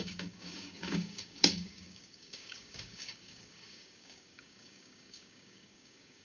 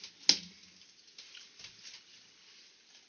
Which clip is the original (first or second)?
second